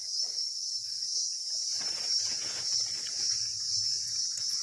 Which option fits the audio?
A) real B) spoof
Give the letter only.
B